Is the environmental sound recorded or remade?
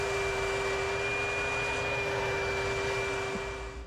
recorded